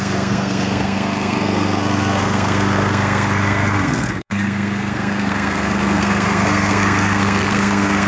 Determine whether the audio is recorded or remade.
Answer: remade